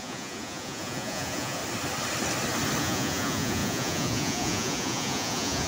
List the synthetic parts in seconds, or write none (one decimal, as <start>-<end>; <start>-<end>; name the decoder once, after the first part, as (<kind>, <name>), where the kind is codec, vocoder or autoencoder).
0.0-1.6 (vocoder, Vocos); 2.8-5.7